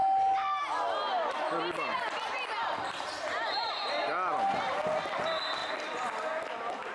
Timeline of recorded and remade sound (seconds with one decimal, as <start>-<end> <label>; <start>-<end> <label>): 0.0-6.9 recorded